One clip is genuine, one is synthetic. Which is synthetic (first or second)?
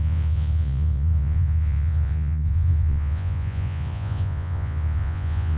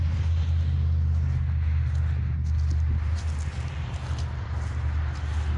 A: first